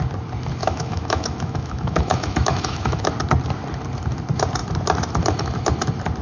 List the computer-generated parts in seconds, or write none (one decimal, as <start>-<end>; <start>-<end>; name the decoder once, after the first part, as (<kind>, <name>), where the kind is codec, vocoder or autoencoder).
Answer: 0.6-3.1 (autoencoder, DAC-VAE)